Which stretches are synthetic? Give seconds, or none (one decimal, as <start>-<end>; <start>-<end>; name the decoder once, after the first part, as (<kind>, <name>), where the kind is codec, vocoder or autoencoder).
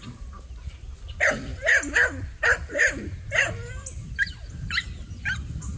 none